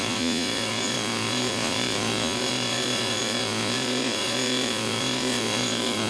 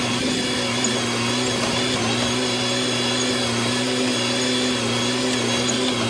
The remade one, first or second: first